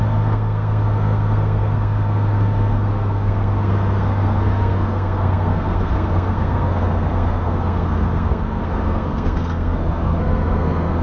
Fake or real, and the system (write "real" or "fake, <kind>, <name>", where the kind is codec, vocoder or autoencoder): fake, codec, SNAC